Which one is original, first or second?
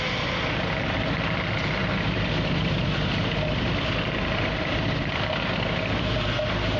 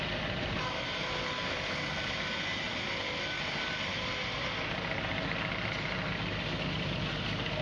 second